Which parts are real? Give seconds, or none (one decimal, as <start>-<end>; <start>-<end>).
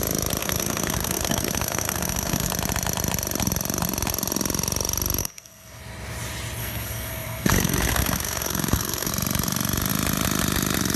0.0-0.4; 2.5-5.2; 5.8-6.6; 9.1-11.0